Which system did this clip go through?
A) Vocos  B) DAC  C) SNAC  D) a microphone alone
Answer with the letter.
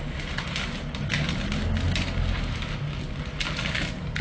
D